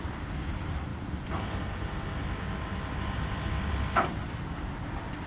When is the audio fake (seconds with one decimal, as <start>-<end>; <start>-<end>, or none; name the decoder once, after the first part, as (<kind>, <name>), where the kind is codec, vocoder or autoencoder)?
none